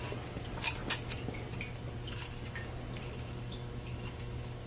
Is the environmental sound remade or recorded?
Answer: recorded